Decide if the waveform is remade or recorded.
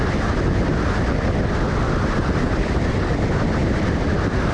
recorded